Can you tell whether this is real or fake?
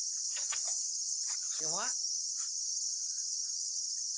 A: fake